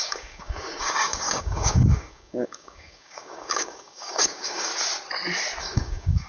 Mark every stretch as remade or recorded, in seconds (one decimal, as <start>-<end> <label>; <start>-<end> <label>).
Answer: 0.0-4.7 remade; 4.7-5.6 recorded; 5.6-6.3 remade